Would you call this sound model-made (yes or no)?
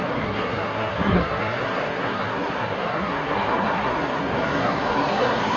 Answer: yes